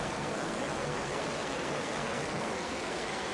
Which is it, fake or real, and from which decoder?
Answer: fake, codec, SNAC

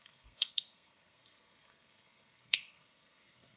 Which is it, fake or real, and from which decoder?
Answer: fake, codec, SNAC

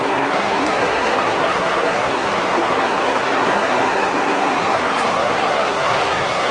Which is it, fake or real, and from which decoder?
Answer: fake, codec, SNAC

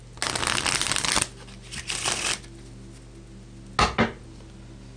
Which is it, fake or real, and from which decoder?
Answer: real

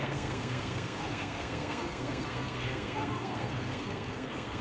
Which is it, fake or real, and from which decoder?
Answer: fake, codec, SNAC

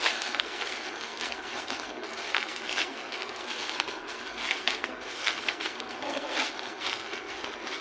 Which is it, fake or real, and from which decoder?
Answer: fake, codec, SNAC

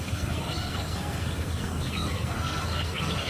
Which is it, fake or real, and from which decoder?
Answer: fake, codec, SNAC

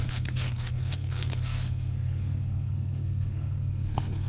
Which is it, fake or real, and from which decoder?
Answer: fake, codec, SNAC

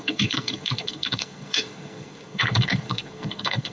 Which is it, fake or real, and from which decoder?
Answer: fake, codec, SNAC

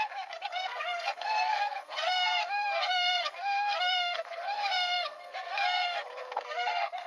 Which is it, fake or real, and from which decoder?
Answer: fake, codec, SNAC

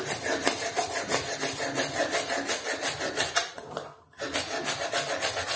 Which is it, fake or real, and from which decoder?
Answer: real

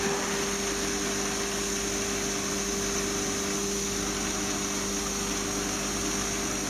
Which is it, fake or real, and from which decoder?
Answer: real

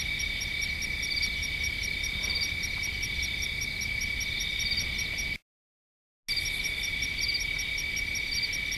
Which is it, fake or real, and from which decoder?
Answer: real